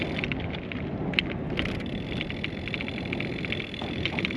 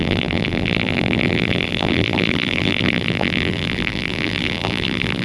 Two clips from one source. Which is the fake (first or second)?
second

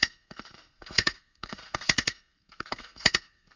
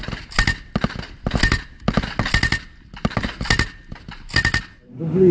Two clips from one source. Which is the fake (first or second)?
first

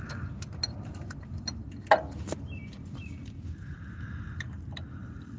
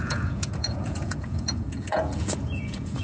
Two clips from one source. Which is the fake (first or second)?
second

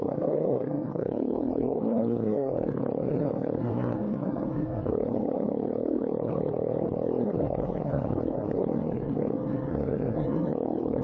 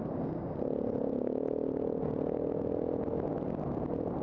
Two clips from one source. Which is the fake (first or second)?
first